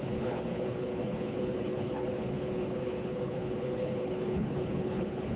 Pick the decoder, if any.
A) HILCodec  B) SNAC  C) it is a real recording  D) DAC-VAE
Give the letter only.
A